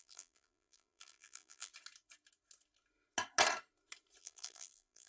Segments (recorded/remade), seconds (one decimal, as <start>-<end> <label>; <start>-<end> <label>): 0.0-1.7 remade; 1.7-4.2 recorded; 4.2-5.1 remade